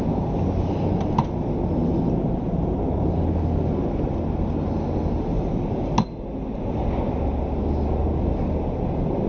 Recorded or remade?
recorded